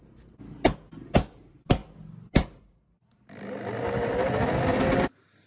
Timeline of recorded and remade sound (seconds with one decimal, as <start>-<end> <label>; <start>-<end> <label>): 0.0-5.5 recorded